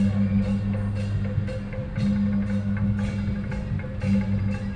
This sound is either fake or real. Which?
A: real